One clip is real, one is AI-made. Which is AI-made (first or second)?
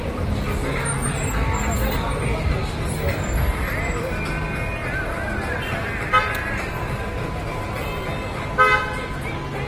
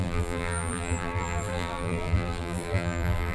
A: second